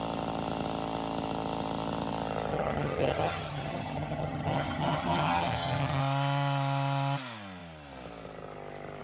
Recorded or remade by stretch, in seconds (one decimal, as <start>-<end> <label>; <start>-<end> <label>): 0.0-2.5 recorded; 2.5-6.0 remade; 6.0-9.0 recorded